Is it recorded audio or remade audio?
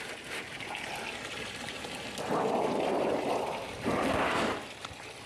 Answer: recorded